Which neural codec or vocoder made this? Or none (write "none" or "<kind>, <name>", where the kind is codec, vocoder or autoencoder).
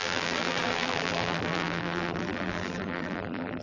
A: vocoder, BigVGAN v2